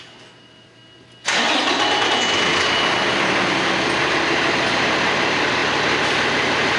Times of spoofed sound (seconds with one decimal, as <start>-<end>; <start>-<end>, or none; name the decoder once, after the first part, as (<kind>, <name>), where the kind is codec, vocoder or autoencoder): 0.0-0.8 (vocoder, BigVGAN v2); 4.5-5.6